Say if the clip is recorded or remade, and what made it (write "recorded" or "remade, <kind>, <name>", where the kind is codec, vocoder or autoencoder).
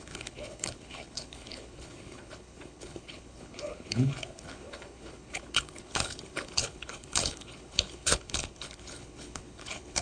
remade, codec, HILCodec